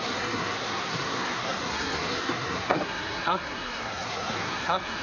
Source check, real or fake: fake